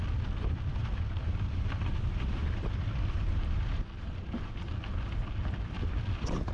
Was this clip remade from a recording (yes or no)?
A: yes